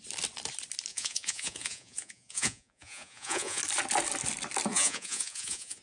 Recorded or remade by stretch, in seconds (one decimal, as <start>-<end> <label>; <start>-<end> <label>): 0.0-0.9 recorded; 0.9-3.6 remade; 3.6-4.7 recorded; 4.7-5.8 remade